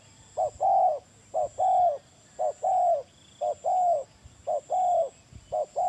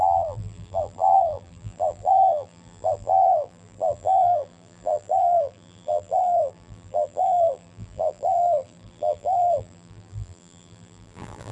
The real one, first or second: first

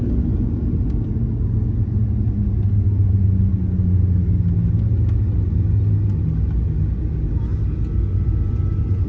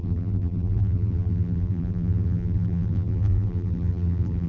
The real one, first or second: first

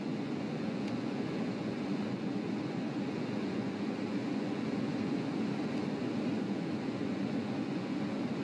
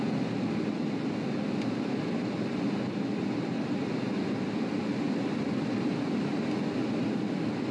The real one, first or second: second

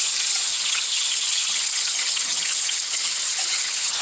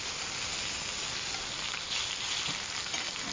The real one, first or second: second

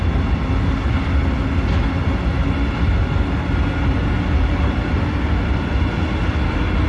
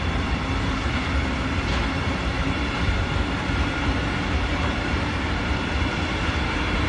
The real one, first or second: first